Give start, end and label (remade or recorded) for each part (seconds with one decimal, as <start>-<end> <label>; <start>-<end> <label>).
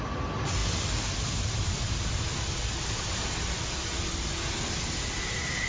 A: 0.0-5.7 recorded